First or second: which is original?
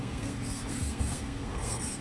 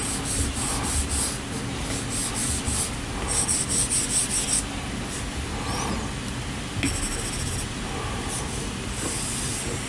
second